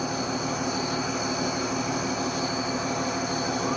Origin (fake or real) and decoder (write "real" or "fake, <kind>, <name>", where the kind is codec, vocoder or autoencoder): real